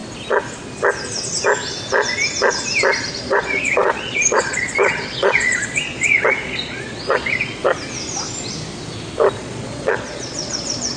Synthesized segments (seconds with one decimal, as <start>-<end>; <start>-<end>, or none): 3.2-7.6; 9.3-11.0